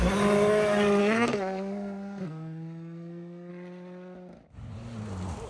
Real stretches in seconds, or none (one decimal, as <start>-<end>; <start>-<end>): 0.0-1.0; 3.5-5.5